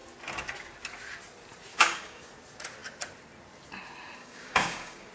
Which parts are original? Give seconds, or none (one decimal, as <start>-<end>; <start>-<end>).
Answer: 0.0-1.7; 2.3-4.2